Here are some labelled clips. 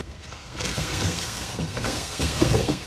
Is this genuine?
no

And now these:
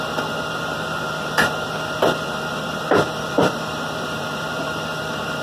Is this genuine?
no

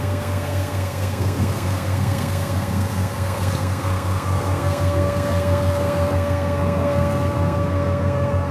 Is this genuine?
no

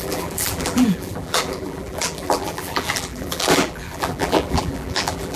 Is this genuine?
no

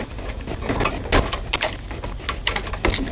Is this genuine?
yes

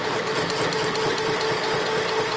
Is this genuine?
yes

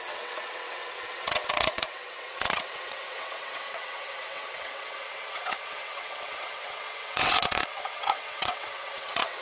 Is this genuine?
no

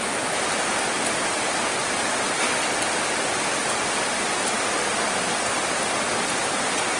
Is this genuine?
yes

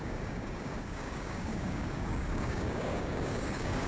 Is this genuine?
no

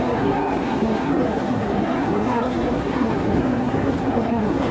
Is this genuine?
no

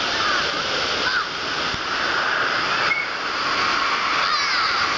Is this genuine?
yes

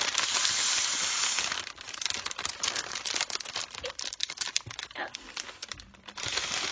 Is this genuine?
yes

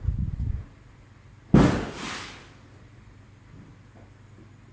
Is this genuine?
yes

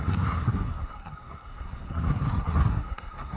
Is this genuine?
no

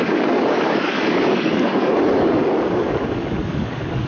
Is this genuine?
no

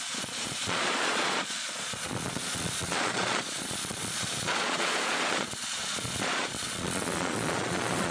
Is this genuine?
no